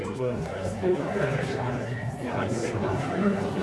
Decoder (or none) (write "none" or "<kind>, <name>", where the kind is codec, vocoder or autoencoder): codec, SNAC